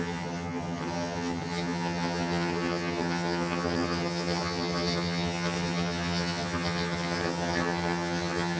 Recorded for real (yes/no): no